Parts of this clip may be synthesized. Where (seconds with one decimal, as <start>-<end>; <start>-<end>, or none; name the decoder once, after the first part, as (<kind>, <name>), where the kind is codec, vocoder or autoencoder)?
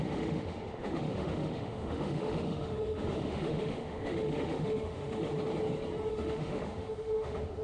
0.0-5.3 (autoencoder, DAC-VAE); 6.1-7.6